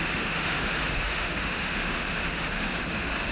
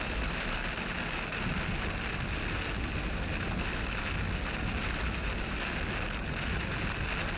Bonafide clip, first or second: second